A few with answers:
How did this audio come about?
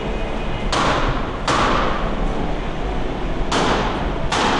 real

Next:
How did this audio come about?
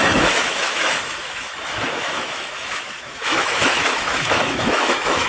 fake